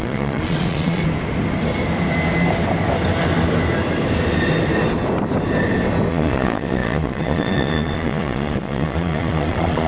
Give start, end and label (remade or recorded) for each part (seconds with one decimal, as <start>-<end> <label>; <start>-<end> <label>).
0.0-1.0 remade; 1.0-6.1 recorded; 6.1-9.9 remade